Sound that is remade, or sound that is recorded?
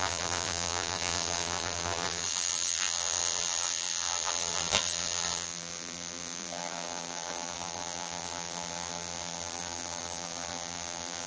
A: remade